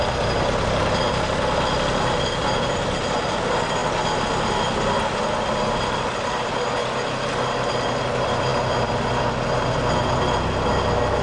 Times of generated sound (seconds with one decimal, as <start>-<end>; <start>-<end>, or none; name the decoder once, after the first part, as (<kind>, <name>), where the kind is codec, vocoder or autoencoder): none